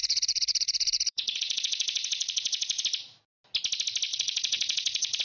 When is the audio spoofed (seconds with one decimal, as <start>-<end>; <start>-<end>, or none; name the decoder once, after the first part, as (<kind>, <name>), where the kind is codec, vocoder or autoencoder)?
0.0-2.8 (vocoder, Vocos); 4.1-5.2